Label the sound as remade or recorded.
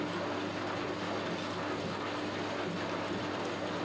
recorded